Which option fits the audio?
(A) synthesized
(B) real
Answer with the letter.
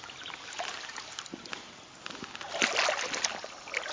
B